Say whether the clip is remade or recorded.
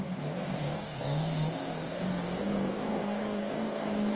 remade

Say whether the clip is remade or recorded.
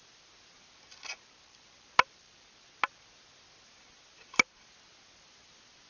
recorded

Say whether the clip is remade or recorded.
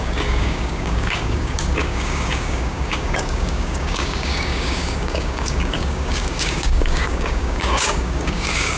remade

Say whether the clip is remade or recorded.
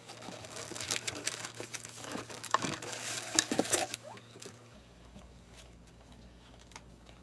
remade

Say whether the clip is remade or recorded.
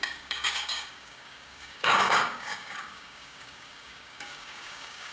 remade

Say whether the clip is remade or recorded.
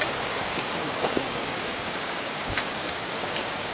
remade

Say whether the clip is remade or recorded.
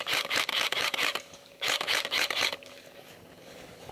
remade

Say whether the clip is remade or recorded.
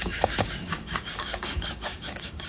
remade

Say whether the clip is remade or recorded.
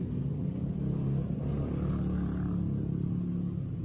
recorded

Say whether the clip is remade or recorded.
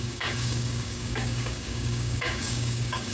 remade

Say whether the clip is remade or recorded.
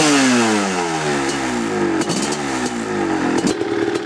recorded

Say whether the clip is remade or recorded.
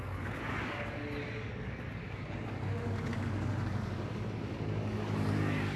remade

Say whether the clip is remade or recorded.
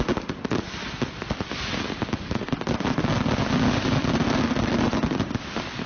recorded